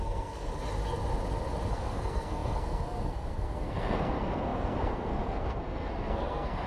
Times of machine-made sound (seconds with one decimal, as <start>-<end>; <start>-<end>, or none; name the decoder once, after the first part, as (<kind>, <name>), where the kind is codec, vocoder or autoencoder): 0.0-0.5 (codec, SNAC); 1.7-6.7